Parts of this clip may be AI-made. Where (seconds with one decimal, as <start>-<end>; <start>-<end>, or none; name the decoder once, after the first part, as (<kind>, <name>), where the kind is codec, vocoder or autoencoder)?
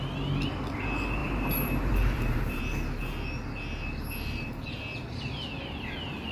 1.2-2.6 (vocoder, BigVGAN v2)